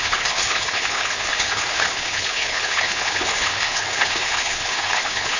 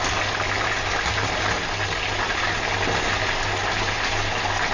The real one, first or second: second